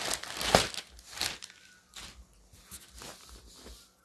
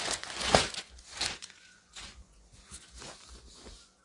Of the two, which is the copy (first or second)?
second